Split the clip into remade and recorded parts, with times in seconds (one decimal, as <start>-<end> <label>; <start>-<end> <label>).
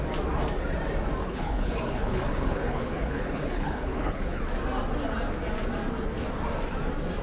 0.0-1.2 recorded; 1.2-4.4 remade; 4.4-7.2 recorded